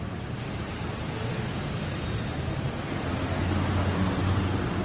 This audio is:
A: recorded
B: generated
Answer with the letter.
A